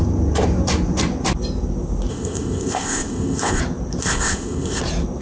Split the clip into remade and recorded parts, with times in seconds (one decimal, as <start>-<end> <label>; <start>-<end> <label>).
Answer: 0.0-2.1 recorded; 2.1-3.6 remade; 3.6-4.0 recorded; 4.0-4.8 remade; 4.8-5.2 recorded